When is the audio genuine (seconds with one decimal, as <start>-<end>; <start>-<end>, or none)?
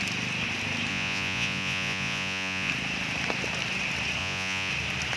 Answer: 0.0-0.9; 2.7-4.2; 4.7-5.2